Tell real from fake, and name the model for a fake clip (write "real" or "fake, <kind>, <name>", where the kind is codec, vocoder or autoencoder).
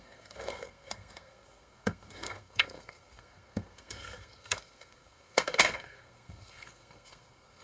fake, codec, SNAC